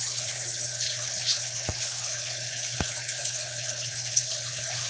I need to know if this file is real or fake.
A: fake